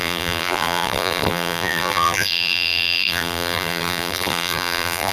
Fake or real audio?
fake